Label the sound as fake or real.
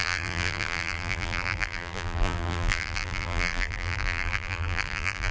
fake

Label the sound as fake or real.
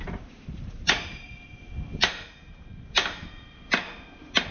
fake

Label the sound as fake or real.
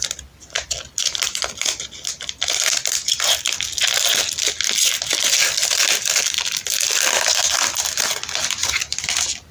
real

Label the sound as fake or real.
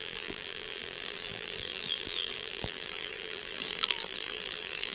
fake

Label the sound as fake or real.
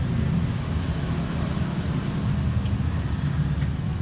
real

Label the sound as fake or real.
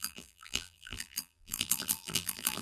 fake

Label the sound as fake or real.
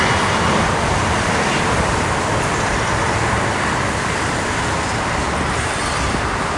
fake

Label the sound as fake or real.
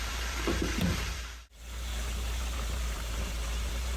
fake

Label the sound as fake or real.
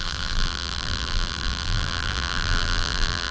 fake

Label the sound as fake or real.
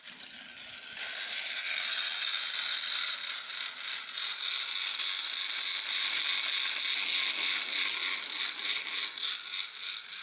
real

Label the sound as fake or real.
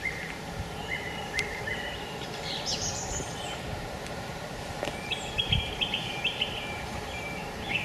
fake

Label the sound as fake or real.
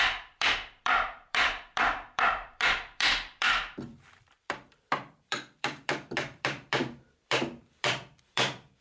fake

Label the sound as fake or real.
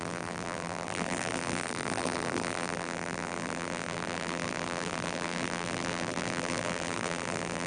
fake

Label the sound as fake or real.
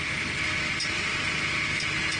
real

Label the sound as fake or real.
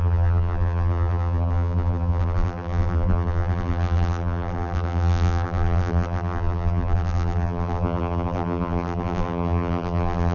fake